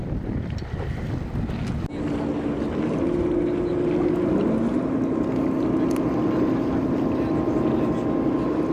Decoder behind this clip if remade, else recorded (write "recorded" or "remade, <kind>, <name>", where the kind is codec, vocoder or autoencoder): recorded